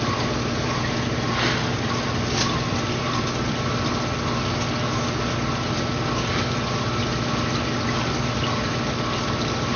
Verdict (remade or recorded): recorded